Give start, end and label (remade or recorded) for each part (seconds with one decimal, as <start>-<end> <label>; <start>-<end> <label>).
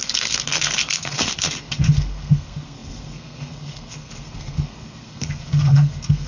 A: 0.0-6.3 remade